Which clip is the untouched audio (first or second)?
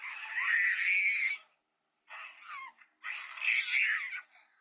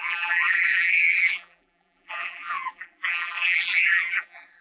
first